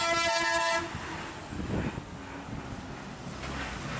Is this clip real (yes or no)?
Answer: yes